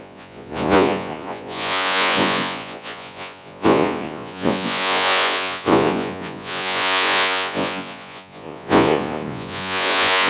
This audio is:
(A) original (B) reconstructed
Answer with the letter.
B